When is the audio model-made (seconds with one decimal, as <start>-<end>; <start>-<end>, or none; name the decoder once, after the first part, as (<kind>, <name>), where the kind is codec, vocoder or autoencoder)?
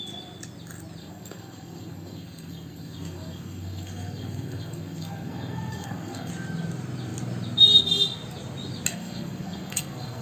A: 1.0-6.3 (codec, SNAC); 8.9-10.2